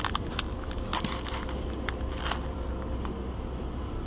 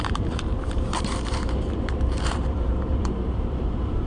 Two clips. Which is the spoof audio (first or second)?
second